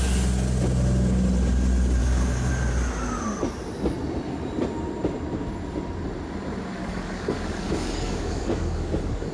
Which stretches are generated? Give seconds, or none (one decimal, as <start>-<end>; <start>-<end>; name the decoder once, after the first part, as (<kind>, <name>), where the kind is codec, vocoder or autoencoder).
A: 2.0-2.5 (codec, DAC); 6.8-9.3